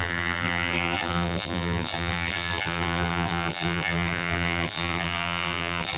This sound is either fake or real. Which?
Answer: fake